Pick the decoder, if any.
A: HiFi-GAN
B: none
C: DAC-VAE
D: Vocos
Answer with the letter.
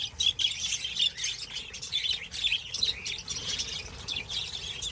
B